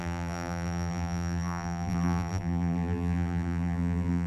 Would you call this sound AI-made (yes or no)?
yes